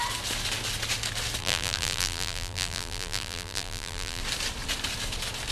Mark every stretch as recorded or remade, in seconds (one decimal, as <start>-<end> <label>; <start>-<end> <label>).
0.0-1.4 recorded; 1.4-4.2 remade; 4.2-5.5 recorded